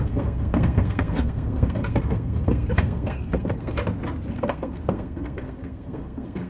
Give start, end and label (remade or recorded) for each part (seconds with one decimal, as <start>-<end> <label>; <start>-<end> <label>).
0.0-3.8 remade; 3.8-4.3 recorded; 4.3-6.5 remade